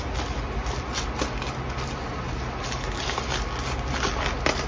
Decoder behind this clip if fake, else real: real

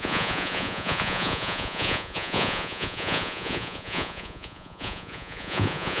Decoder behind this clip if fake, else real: fake, vocoder, Vocos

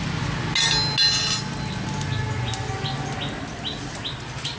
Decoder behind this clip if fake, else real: real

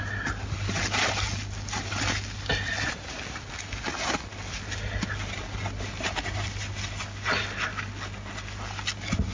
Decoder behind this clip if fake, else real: real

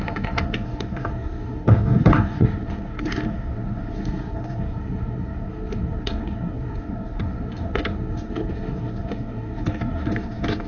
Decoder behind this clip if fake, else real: fake, codec, SNAC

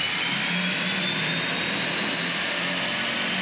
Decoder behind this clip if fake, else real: real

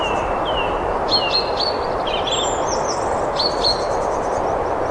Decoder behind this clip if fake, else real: real